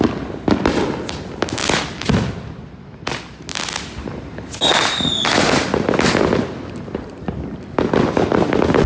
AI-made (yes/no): no